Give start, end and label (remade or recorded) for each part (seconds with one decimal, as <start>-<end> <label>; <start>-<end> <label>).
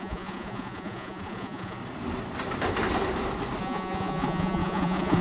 0.0-1.8 remade; 1.8-3.6 recorded; 3.6-5.2 remade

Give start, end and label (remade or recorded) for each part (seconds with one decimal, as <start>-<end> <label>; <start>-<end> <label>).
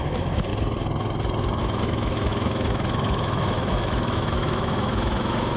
0.0-0.5 remade; 0.5-1.6 recorded; 1.6-5.6 remade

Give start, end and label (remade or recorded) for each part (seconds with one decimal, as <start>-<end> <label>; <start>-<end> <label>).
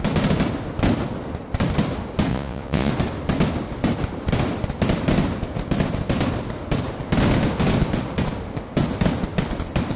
0.0-2.3 recorded; 2.3-2.9 remade; 2.9-10.0 recorded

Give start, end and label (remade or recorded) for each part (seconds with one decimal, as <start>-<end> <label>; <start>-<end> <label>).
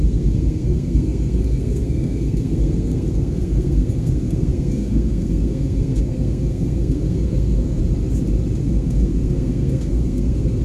0.0-7.8 remade; 7.8-8.6 recorded; 8.6-10.6 remade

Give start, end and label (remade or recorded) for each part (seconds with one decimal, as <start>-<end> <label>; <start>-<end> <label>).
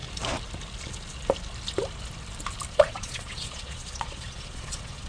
0.0-2.7 recorded; 2.7-5.1 remade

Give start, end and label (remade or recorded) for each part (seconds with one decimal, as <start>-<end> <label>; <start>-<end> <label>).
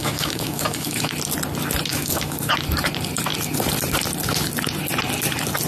0.0-1.1 remade; 1.1-1.9 recorded; 1.9-2.5 remade; 2.5-5.7 recorded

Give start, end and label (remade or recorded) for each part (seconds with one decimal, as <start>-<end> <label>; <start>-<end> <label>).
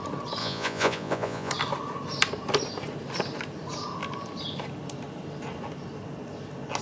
0.0-0.4 recorded; 0.4-1.5 remade; 1.5-6.8 recorded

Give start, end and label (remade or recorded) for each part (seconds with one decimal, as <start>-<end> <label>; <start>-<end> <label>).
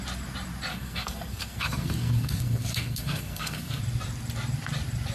0.0-0.7 recorded; 0.7-3.8 remade; 3.8-5.1 recorded